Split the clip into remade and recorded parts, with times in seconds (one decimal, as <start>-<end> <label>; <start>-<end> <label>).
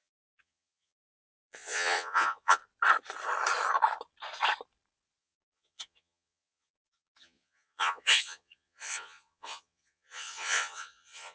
0.0-2.6 remade; 2.6-5.2 recorded; 5.2-11.3 remade